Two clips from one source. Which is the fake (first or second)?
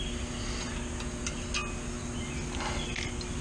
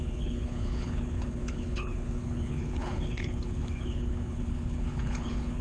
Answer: second